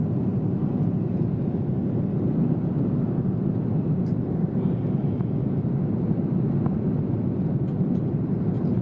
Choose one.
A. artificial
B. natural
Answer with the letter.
B